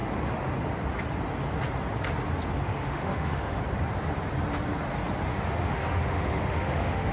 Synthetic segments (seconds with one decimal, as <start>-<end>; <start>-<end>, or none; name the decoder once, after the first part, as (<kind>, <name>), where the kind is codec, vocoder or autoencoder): 2.6-3.6 (autoencoder, DAC-VAE); 5.3-7.1